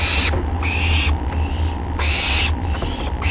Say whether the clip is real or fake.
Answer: real